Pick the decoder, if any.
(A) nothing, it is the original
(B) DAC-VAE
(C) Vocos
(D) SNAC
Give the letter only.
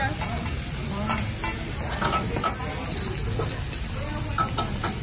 A